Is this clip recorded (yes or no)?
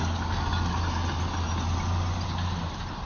yes